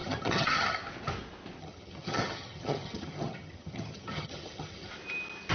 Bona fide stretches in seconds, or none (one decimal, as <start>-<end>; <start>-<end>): 0.8-1.6; 4.9-5.5